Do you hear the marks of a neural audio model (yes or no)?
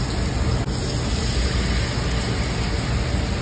no